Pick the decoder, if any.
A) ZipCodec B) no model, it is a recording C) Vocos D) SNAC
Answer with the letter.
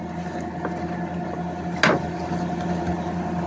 B